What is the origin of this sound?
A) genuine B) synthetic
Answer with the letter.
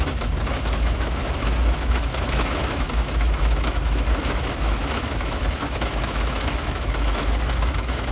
B